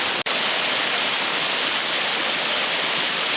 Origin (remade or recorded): recorded